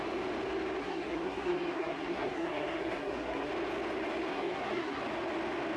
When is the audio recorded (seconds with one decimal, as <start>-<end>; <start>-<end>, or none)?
0.0-0.8; 3.5-4.3; 5.0-5.8

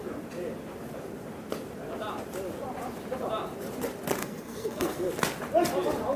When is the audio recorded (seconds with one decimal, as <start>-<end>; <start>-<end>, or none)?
0.0-4.2; 5.1-6.2

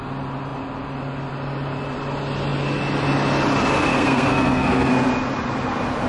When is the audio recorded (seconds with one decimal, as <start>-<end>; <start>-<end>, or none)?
0.0-3.9; 4.9-6.1

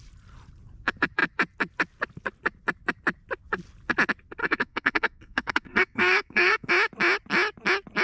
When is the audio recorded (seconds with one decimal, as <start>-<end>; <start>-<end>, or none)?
0.0-4.4; 6.7-8.0

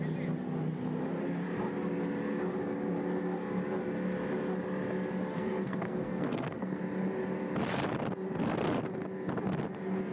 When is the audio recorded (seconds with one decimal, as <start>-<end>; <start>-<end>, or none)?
0.0-5.3; 6.8-10.1

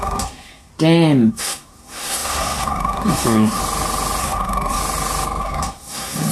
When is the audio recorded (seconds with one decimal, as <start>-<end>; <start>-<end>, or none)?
0.7-1.3; 3.6-4.2; 4.8-5.4